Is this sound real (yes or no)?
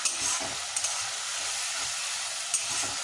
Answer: yes